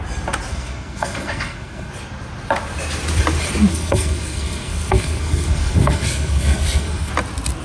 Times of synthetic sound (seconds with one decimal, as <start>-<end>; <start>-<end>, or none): 0.5-1.9; 3.7-7.1